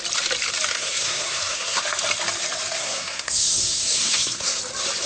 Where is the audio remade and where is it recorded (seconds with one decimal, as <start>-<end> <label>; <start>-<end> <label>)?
0.0-0.7 recorded; 0.7-1.8 remade; 1.8-2.8 recorded; 2.8-4.6 remade; 4.6-5.1 recorded